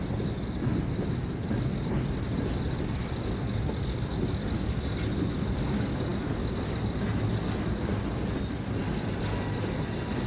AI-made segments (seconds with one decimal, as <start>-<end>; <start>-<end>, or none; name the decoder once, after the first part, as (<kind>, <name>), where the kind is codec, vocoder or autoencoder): none